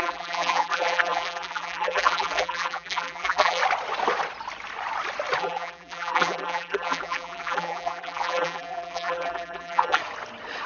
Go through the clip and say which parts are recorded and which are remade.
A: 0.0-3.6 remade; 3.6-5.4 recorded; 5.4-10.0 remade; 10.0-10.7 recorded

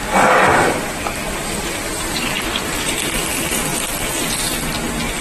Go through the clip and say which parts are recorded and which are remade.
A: 0.0-0.5 recorded; 0.5-3.0 remade; 3.0-3.7 recorded; 3.7-4.3 remade; 4.3-5.2 recorded